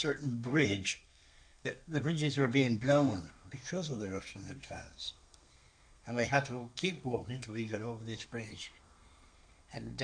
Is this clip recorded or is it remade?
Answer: remade